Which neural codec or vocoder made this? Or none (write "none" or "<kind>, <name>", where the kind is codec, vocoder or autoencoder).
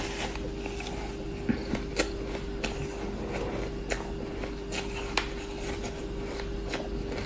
none